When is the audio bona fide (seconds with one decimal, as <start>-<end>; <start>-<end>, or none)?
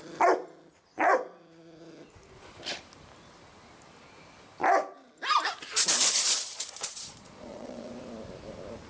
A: 0.0-5.7; 7.9-8.9